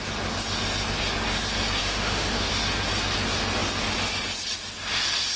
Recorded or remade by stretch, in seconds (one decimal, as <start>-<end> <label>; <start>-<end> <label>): 0.0-1.8 recorded; 1.8-2.5 remade; 2.5-5.4 recorded